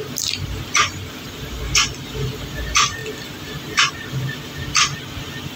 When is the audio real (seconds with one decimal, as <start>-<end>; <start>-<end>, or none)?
0.0-0.8; 1.6-5.6